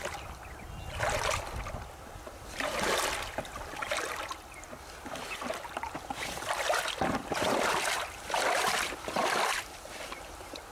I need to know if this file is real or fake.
fake